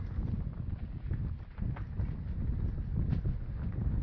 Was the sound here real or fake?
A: real